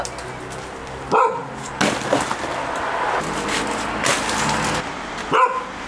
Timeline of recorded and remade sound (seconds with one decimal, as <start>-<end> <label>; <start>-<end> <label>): 0.0-5.9 recorded